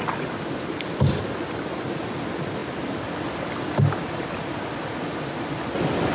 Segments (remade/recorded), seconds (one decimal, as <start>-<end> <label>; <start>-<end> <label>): 0.0-6.1 recorded